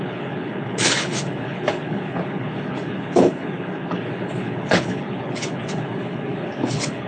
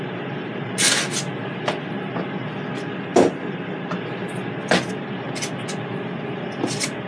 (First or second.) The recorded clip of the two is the second